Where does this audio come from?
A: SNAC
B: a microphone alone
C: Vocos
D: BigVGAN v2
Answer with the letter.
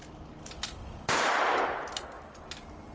B